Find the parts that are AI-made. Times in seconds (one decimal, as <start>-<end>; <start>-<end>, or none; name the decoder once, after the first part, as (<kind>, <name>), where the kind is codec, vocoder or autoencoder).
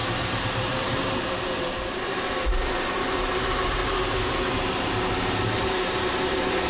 0.0-3.8 (vocoder, BigVGAN v2); 4.7-6.7